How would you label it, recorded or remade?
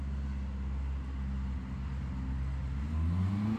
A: recorded